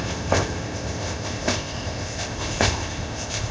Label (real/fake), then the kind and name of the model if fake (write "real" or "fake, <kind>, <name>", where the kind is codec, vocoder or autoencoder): fake, codec, ZipCodec